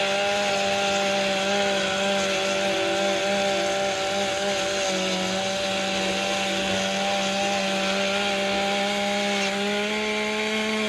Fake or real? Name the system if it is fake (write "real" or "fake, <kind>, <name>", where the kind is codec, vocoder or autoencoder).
real